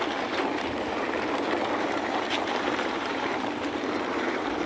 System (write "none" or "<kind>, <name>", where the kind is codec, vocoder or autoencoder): vocoder, BigVGAN v2